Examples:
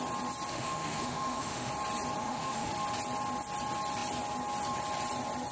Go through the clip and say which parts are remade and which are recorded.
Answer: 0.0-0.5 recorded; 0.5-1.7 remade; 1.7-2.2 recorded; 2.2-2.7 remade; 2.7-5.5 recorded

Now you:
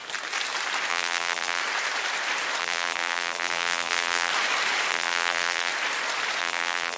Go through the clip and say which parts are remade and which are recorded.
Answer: 0.0-0.9 recorded; 0.9-1.6 remade; 1.6-2.6 recorded; 2.6-4.3 remade; 4.3-4.9 recorded; 4.9-5.7 remade; 5.7-6.4 recorded; 6.4-7.0 remade

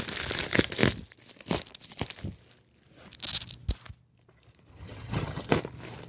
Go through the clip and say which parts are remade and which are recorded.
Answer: 0.0-4.7 recorded; 4.7-5.5 remade; 5.5-6.1 recorded